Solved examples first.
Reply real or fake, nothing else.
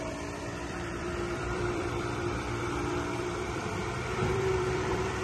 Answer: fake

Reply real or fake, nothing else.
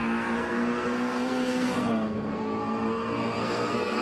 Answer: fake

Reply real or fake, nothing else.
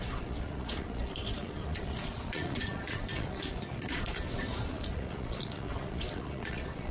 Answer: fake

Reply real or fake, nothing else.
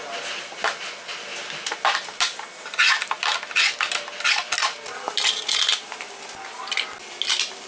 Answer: real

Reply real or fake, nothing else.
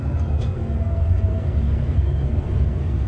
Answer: fake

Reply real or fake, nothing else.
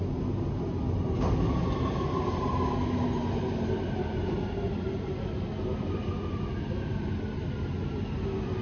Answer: real